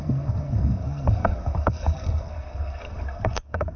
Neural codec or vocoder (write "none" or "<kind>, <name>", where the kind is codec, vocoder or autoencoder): codec, SNAC